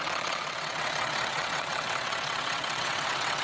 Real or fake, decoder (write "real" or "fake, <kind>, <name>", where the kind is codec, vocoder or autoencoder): fake, vocoder, WaveNeXt